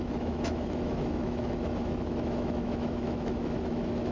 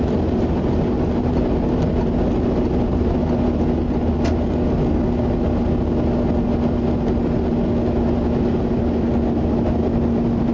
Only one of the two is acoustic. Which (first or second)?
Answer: second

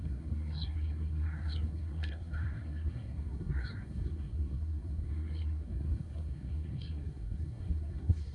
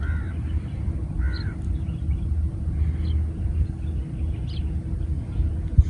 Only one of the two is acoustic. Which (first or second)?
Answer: second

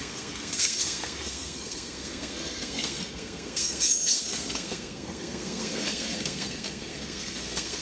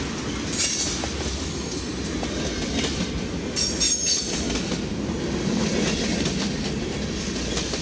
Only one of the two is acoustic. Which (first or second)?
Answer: second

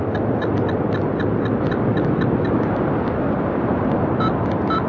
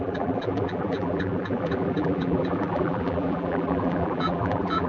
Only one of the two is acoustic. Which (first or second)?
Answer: first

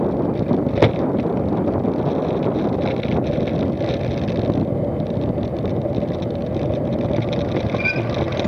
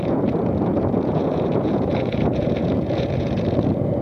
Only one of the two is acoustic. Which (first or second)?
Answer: first